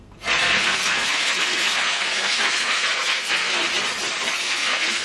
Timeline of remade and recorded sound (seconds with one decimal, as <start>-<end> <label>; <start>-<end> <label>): 0.0-3.5 remade; 3.5-4.3 recorded; 4.3-5.0 remade